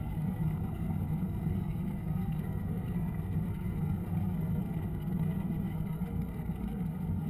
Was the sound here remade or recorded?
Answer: remade